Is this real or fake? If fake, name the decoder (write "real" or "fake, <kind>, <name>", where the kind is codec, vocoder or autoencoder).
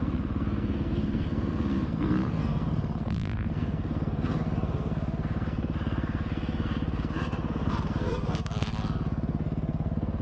fake, codec, SNAC